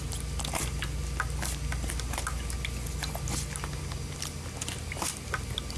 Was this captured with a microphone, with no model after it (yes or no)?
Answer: yes